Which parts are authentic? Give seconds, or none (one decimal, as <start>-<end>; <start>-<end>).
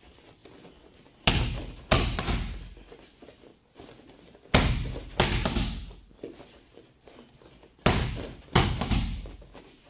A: 0.0-9.9